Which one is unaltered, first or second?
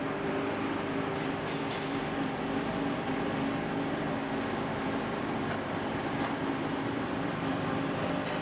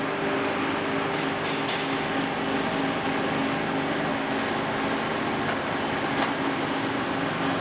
second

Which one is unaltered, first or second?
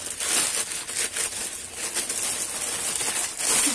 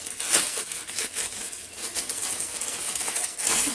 first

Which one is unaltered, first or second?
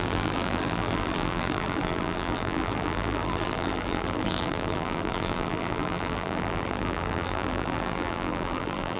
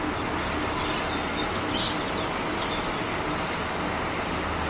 second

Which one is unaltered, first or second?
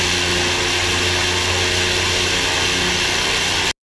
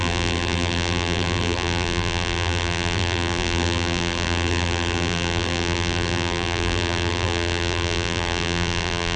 first